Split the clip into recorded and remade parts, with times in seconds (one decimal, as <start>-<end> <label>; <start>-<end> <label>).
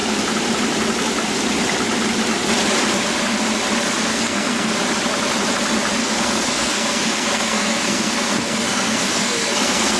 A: 0.0-4.1 recorded; 4.1-4.7 remade; 4.7-6.0 recorded; 6.0-10.0 remade